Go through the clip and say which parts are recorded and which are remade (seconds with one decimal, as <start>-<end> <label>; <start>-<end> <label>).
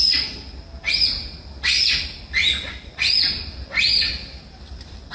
0.0-5.1 recorded